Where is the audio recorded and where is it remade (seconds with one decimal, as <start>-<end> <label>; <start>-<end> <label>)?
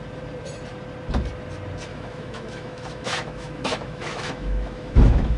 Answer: 0.0-1.9 recorded; 1.9-5.4 remade